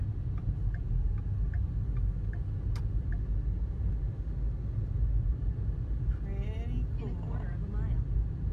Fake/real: real